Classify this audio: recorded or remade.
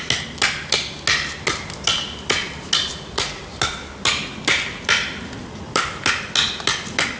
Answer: recorded